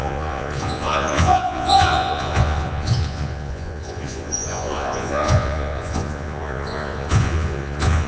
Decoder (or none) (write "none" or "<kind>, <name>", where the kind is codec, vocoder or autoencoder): vocoder, Vocos